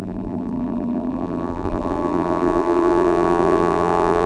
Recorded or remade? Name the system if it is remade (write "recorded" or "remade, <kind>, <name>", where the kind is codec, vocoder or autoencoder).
remade, vocoder, BigVGAN v2